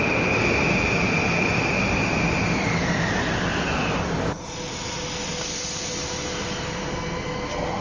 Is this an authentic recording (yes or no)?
yes